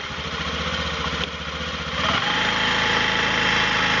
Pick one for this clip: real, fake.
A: real